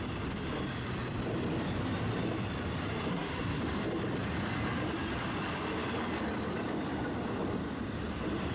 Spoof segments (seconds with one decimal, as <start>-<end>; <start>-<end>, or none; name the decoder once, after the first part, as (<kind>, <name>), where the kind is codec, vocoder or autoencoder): 3.1-3.6 (codec, SNAC)